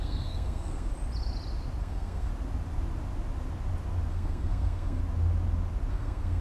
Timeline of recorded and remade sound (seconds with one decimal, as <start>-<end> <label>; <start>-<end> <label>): 0.0-0.9 remade; 0.9-1.8 recorded; 1.8-2.3 remade; 2.3-4.1 recorded; 4.1-5.0 remade; 5.0-5.9 recorded; 5.9-6.4 remade